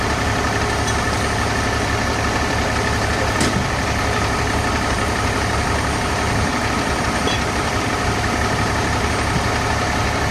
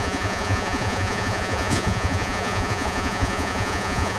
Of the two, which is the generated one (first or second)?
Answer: second